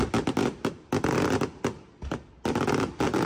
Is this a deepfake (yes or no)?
no